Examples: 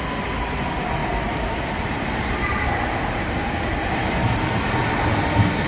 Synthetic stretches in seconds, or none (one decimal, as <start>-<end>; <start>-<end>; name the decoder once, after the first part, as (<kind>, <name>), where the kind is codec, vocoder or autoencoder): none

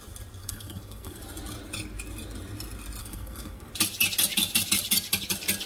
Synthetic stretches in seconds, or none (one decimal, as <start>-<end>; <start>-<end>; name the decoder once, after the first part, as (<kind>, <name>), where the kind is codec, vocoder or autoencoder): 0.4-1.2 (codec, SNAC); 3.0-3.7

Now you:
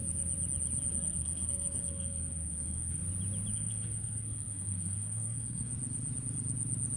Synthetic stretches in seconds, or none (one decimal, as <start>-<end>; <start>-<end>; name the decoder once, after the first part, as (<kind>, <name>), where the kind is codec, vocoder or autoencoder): 0.9-3.0 (codec, SNAC); 3.5-5.7

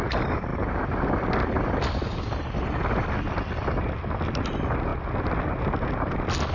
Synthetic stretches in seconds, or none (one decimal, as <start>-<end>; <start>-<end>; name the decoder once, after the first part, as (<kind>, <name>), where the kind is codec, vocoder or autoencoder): none

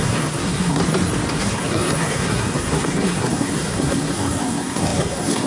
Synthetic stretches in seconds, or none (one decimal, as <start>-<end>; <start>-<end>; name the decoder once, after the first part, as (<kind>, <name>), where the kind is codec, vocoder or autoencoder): 0.0-0.8 (codec, SNAC); 1.3-5.5